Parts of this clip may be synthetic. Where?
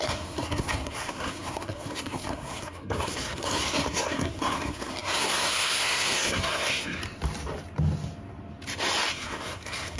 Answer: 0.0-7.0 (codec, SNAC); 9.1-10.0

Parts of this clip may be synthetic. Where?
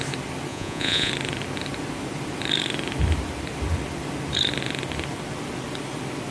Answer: 0.5-1.1 (vocoder, Vocos)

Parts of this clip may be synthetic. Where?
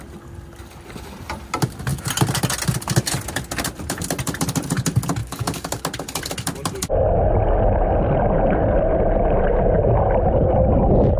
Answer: 5.2-5.8 (codec, DAC)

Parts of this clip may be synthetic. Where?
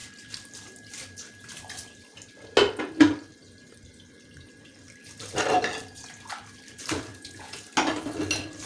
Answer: 7.1-7.6 (vocoder, Vocos)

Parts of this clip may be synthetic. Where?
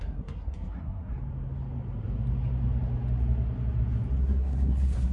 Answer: 0.0-1.1 (codec, SNAC); 4.2-5.1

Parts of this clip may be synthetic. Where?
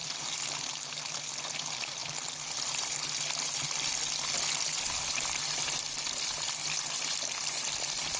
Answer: 0.0-0.6 (vocoder, BigVGAN v2)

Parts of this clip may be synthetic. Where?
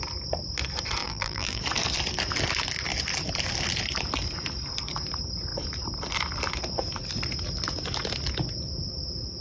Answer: 1.0-1.6 (vocoder, BigVGAN v2)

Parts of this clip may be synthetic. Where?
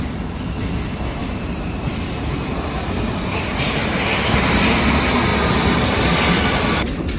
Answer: 1.2-4.7 (vocoder, BigVGAN v2)